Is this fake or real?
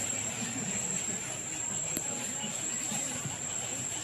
fake